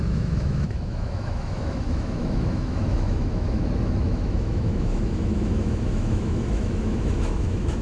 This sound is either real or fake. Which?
fake